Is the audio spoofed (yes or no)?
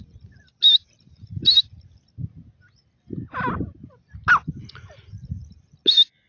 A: no